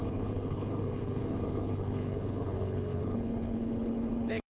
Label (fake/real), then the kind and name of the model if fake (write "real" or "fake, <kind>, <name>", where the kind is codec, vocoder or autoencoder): fake, codec, HILCodec